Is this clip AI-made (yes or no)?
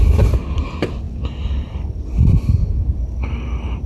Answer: no